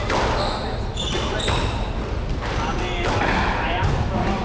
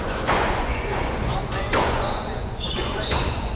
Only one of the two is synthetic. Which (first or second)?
second